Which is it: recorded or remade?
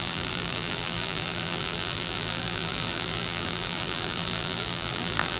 remade